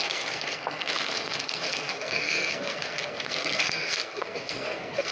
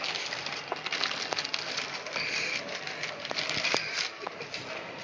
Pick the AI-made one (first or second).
first